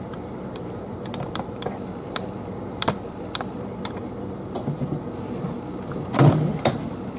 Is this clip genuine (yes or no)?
no